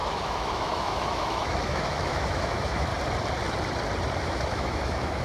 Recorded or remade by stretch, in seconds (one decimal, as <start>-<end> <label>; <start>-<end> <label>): 0.0-2.9 remade; 2.9-4.2 recorded; 4.2-5.2 remade